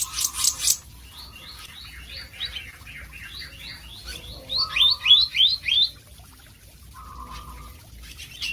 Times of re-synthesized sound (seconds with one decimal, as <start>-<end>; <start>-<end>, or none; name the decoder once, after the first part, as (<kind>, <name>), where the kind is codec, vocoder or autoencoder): none